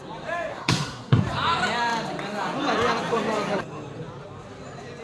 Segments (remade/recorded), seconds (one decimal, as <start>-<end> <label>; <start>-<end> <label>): 0.0-0.5 recorded; 0.5-1.2 remade; 1.2-5.0 recorded

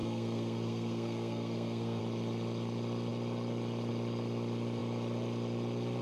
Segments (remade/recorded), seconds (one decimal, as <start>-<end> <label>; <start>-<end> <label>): 0.0-2.0 remade; 2.0-6.0 recorded